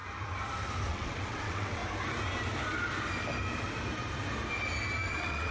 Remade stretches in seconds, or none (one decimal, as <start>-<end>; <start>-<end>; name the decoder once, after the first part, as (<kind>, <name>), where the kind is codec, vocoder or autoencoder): 0.9-1.8 (vocoder, WaveNeXt); 5.1-5.5